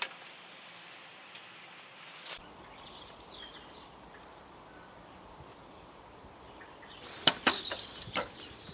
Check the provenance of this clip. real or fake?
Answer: fake